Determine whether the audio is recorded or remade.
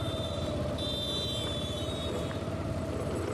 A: recorded